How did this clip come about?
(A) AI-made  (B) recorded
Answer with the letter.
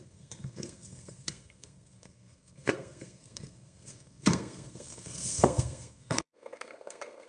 A